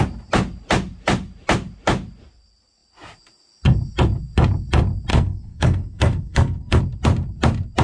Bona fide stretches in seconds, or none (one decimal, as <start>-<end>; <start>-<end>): 0.0-5.1; 6.8-7.8